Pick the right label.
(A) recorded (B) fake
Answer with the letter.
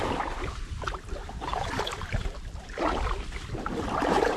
B